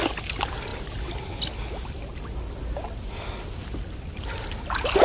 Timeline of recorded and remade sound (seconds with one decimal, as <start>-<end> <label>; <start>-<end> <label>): 0.0-5.0 recorded